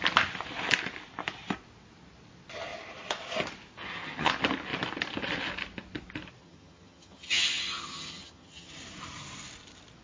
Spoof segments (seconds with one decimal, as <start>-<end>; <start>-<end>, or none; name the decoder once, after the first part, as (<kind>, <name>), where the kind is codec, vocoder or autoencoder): 3.8-4.3 (vocoder, HiFi-GAN); 6.4-8.7